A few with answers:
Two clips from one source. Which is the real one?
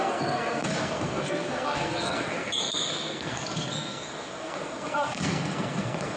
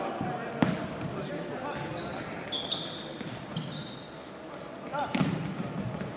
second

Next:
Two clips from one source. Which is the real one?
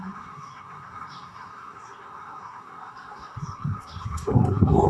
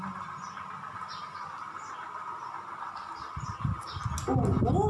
second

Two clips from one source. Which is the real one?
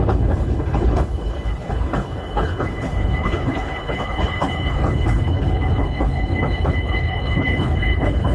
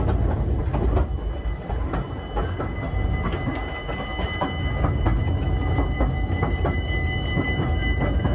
second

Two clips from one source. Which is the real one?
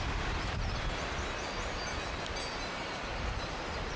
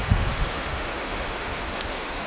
first